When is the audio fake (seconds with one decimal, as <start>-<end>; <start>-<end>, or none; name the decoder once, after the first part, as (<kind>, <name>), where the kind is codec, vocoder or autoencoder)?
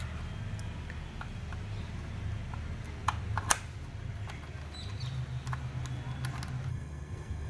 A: 6.7-7.5 (codec, SNAC)